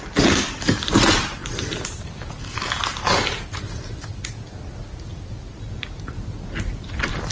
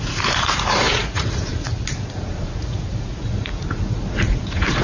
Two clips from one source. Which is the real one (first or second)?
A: first